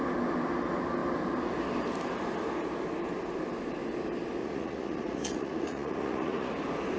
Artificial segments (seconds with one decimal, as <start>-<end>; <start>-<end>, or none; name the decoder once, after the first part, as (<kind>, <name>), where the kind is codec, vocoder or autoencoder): 4.4-6.5 (vocoder, Vocos)